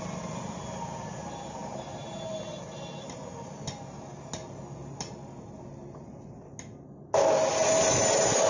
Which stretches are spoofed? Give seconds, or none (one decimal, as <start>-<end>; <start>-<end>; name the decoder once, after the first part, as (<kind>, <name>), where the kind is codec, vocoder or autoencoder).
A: none